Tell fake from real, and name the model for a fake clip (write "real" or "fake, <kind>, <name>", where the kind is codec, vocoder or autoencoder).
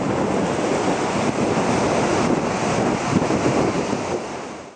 real